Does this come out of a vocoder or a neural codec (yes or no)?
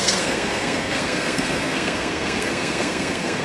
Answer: yes